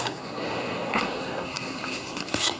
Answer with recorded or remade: remade